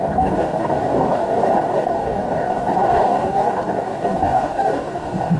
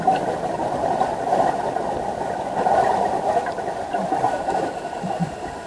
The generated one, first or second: first